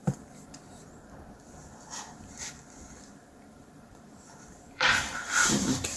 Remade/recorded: remade